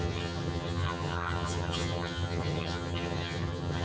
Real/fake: fake